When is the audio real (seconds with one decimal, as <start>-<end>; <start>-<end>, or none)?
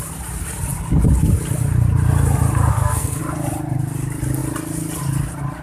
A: 0.0-2.7; 3.2-5.6